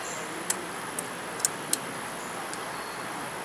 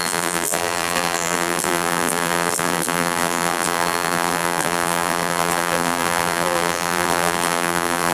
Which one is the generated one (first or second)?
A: second